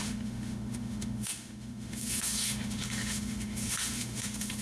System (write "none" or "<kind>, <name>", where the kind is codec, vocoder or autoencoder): autoencoder, DAC-VAE